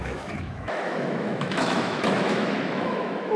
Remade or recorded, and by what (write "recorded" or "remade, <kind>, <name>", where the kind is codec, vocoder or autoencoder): remade, autoencoder, DAC-VAE